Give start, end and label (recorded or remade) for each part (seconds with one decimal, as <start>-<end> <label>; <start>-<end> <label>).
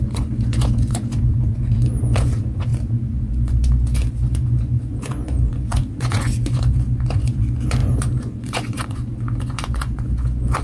0.0-10.6 remade